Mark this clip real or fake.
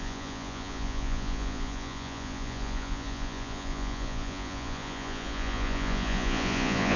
fake